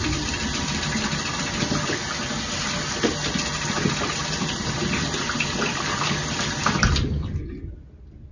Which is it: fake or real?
real